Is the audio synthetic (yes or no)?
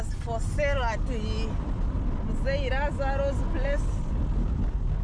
no